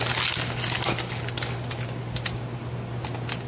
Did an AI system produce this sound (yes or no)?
no